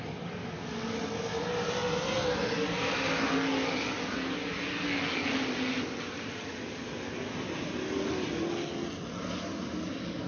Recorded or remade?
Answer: recorded